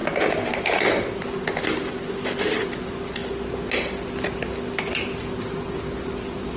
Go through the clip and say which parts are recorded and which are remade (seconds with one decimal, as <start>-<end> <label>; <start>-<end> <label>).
0.0-0.5 remade; 0.5-6.6 recorded